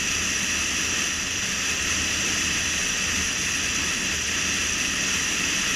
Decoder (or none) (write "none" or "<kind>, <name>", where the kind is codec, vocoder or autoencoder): none